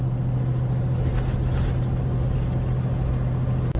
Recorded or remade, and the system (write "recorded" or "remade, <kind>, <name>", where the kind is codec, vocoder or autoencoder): recorded